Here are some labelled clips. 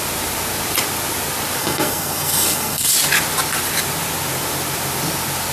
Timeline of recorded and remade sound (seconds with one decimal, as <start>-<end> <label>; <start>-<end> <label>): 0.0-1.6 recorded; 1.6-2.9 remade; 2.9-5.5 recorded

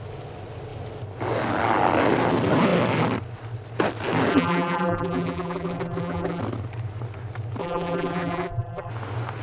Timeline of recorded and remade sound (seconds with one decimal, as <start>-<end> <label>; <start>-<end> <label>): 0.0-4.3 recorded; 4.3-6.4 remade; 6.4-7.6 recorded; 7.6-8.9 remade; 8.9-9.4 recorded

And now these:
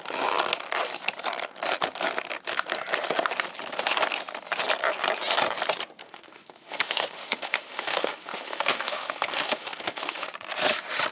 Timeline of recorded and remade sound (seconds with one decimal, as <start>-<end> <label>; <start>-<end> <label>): 0.0-6.0 recorded; 6.0-10.3 remade; 10.3-11.1 recorded

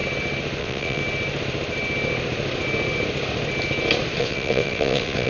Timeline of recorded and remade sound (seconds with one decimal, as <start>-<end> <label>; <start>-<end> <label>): 0.0-0.6 recorded; 0.6-1.0 remade; 1.0-4.2 recorded; 4.2-5.3 remade